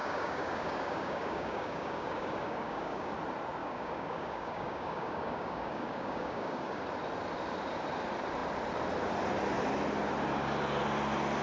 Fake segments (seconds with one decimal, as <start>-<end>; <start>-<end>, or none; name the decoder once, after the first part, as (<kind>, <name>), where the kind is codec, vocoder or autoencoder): 0.0-3.1 (codec, DAC); 3.6-6.8